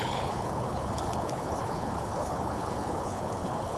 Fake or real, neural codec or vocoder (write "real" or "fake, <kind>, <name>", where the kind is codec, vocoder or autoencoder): fake, codec, HILCodec